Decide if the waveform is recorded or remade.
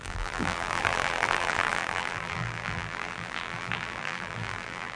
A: remade